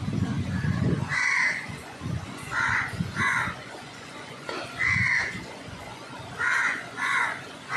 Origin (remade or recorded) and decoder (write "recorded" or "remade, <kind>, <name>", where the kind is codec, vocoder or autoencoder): remade, vocoder, Vocos